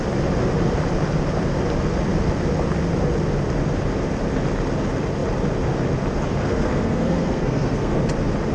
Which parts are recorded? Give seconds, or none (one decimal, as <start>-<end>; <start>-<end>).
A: 0.0-6.4; 8.0-8.5